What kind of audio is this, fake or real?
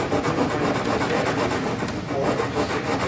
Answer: real